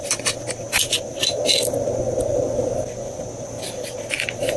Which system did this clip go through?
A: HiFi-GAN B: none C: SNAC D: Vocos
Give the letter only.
B